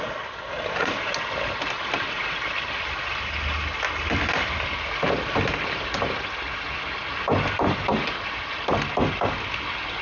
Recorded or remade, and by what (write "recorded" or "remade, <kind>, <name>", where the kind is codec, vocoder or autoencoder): recorded